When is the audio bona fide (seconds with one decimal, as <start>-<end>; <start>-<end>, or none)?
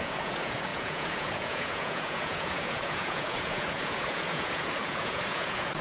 none